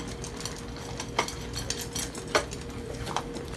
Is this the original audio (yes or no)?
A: yes